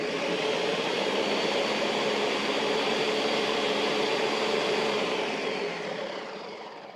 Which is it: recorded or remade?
remade